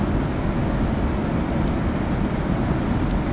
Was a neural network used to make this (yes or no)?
no